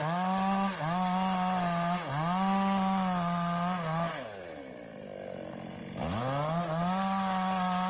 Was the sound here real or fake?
real